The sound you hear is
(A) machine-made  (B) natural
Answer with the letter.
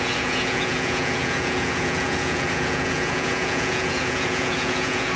A